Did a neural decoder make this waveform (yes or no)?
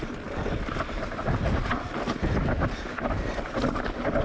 no